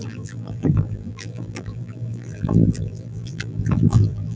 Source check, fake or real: fake